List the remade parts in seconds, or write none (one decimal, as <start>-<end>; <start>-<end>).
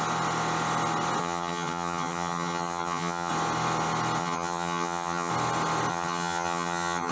1.2-3.3; 4.2-5.3; 5.9-7.1